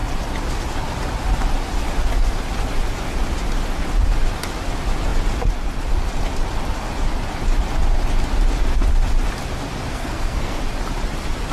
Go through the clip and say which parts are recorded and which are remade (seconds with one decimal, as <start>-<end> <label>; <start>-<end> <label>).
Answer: 0.0-9.9 recorded; 9.9-10.6 remade; 10.6-11.5 recorded